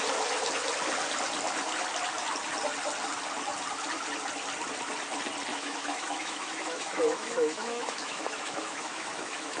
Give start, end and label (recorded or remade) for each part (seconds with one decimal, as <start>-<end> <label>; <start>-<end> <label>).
0.0-5.5 recorded; 5.5-9.6 remade